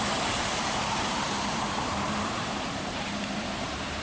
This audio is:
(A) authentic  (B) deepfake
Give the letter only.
B